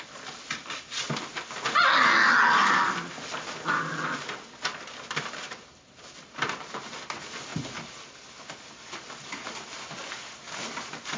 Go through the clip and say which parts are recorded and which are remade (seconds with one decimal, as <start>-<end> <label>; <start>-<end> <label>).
0.0-11.2 recorded